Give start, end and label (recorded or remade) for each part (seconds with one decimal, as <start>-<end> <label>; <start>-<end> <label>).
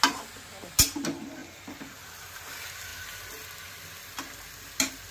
0.0-5.1 recorded